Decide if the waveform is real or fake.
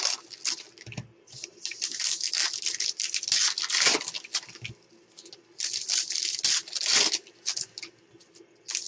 real